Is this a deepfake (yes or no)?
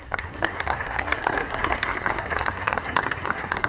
yes